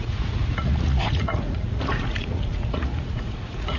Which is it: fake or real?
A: fake